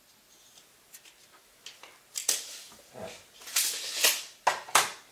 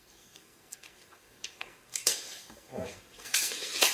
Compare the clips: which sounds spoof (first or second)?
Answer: second